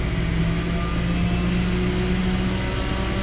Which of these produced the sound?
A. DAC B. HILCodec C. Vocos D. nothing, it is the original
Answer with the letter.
D